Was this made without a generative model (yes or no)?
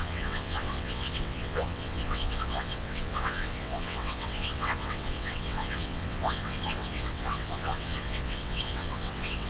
no